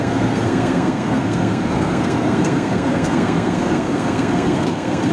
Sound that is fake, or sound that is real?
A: fake